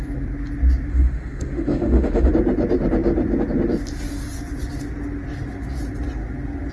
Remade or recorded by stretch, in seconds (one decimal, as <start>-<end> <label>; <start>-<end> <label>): 0.0-0.9 recorded; 0.9-2.3 remade; 2.3-6.7 recorded